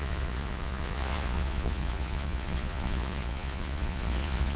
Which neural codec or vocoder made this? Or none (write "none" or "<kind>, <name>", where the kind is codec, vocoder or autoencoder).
vocoder, Vocos